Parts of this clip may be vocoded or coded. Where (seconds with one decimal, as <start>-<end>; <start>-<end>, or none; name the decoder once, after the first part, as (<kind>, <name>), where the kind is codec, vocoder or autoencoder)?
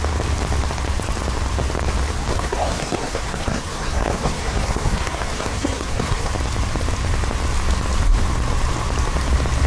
2.3-6.3 (codec, SNAC)